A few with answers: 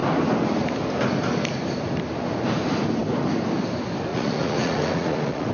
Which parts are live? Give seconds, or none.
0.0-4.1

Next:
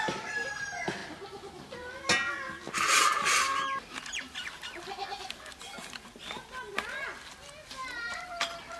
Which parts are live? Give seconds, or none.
0.0-8.8

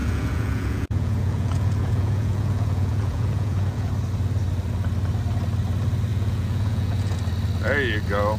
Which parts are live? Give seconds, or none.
3.9-6.1; 7.2-8.4

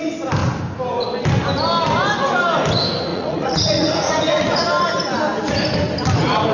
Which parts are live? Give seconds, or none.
0.0-3.1; 4.6-6.5

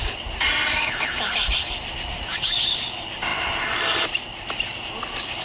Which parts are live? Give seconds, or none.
0.0-5.4

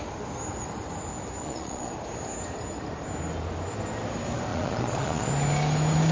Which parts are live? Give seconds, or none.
0.0-1.4; 1.9-4.5; 5.3-6.1

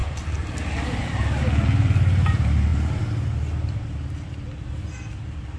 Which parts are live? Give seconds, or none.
0.0-5.6